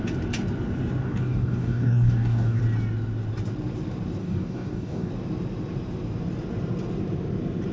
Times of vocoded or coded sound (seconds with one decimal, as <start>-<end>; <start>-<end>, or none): 1.0-2.6; 4.2-5.1